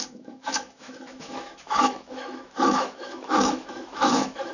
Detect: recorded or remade remade